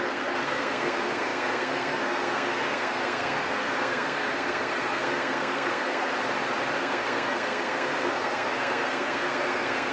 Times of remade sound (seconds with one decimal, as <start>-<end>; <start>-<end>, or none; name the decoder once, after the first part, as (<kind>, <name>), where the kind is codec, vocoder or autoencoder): 0.0-6.1 (codec, SNAC); 6.8-9.9